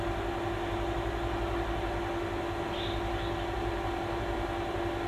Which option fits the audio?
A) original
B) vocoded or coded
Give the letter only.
A